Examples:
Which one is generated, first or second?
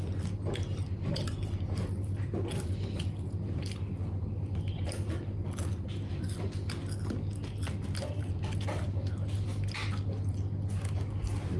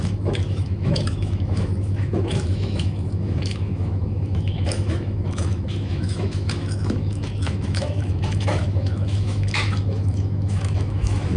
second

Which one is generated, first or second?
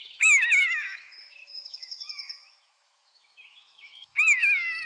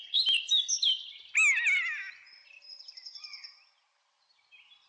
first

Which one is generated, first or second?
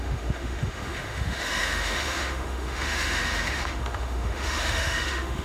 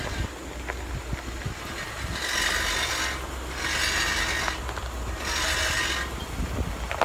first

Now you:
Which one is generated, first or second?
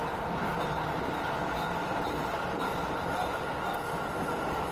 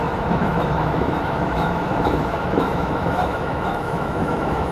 second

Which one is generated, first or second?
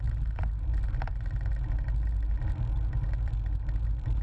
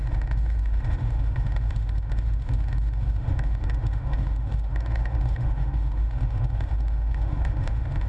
second